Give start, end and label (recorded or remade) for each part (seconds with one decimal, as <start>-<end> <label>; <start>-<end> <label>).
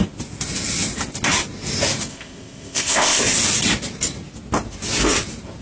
0.0-2.1 recorded; 2.1-3.2 remade; 3.2-5.6 recorded